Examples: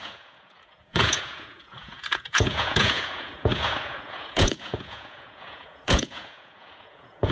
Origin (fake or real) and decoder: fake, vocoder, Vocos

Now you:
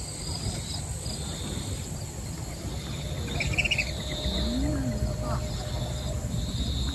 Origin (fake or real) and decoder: real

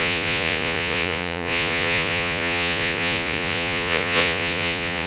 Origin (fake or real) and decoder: fake, vocoder, Vocos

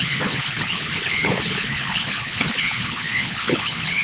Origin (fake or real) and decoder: fake, codec, HILCodec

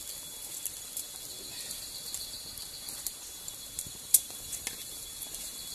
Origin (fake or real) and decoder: real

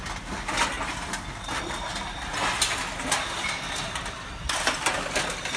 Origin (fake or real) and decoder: real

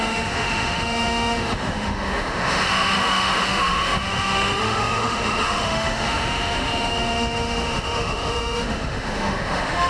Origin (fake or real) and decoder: fake, autoencoder, DAC-VAE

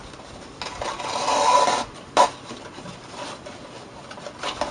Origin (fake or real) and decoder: real